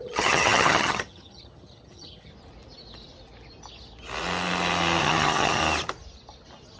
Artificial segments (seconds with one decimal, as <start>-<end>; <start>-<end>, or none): 0.0-2.3; 5.0-5.6